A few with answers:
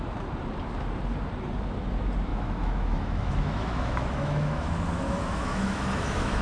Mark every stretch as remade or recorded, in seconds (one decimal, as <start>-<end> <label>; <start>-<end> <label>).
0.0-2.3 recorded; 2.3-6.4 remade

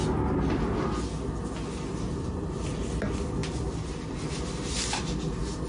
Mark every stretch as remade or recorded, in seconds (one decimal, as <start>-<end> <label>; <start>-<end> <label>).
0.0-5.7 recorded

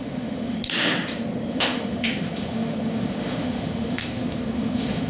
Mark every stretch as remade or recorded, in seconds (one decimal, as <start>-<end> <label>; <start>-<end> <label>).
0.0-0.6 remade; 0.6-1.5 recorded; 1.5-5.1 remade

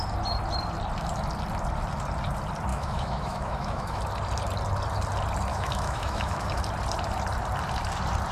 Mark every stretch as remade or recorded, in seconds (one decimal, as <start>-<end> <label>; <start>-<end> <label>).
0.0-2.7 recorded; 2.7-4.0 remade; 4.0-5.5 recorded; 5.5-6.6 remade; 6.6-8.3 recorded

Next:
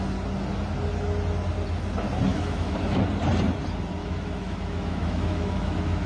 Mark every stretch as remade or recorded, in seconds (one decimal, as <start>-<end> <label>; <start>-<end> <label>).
0.0-2.3 recorded; 2.3-3.0 remade; 3.0-4.0 recorded; 4.0-6.1 remade

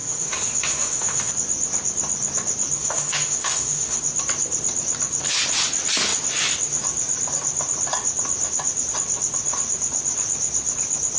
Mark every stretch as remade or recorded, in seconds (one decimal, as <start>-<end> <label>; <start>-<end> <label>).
0.0-1.3 remade; 1.3-2.8 recorded; 2.8-4.0 remade; 4.0-11.2 recorded

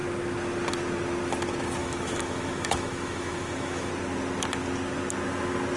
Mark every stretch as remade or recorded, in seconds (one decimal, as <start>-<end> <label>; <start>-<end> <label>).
0.0-1.8 recorded; 1.8-3.9 remade; 3.9-5.8 recorded

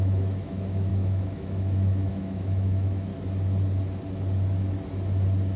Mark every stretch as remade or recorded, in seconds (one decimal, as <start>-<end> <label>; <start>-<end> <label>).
0.0-3.1 remade; 3.1-5.6 recorded